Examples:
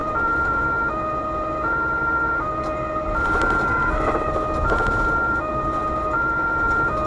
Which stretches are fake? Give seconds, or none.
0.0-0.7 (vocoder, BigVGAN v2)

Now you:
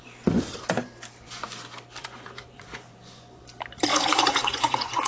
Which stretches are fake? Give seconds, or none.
2.0-3.4 (vocoder, Vocos); 3.9-5.1

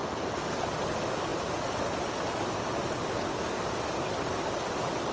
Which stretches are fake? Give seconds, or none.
none

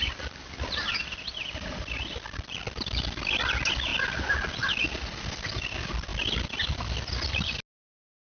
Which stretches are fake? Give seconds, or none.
6.1-6.7 (vocoder, BigVGAN v2)

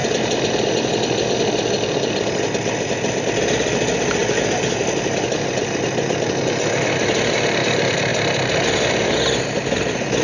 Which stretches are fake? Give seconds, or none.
0.0-4.2 (vocoder, BigVGAN v2); 7.0-8.1; 8.9-10.2

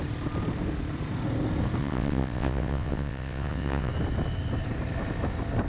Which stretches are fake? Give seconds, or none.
1.8-3.9 (vocoder, WaveNeXt)

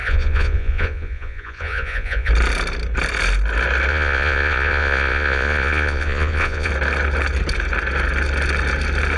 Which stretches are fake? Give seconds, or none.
0.0-2.3 (vocoder, Vocos); 3.9-6.7

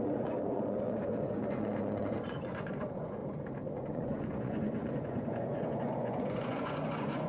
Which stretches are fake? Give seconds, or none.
0.0-3.2 (vocoder, Vocos); 3.8-7.3